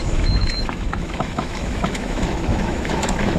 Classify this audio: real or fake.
fake